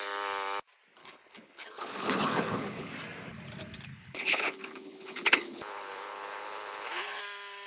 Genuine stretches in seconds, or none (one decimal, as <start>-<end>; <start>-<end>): 0.0-1.0; 2.9-3.9; 7.2-7.7